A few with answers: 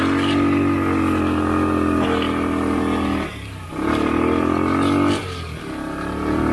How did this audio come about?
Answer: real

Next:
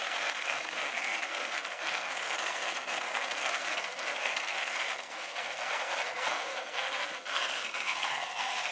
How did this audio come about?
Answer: fake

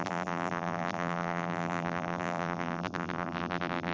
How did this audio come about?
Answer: fake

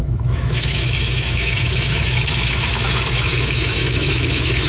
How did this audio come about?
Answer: fake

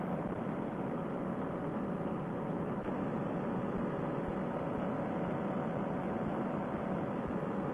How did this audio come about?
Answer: real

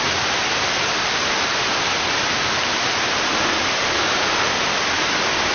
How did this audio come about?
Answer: real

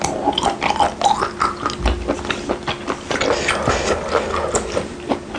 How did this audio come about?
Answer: real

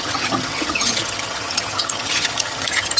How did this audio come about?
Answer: fake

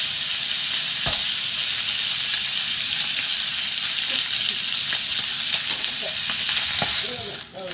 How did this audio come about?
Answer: real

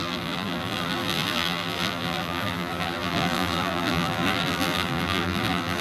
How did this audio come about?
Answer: fake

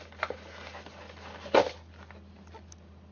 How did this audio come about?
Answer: real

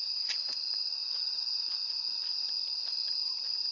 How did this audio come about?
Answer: real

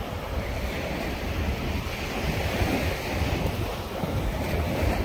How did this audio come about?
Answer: real